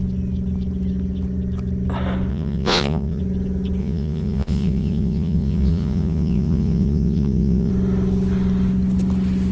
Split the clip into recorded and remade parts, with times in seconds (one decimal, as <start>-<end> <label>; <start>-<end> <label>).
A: 0.0-2.3 recorded; 2.3-3.2 remade; 3.2-3.8 recorded; 3.8-7.7 remade; 7.7-9.5 recorded